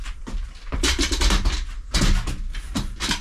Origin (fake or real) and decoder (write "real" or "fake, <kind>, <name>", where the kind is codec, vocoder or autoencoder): real